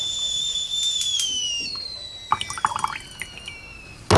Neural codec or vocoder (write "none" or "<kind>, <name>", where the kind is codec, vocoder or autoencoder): none